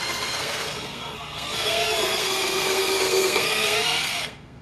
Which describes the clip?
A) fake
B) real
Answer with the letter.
A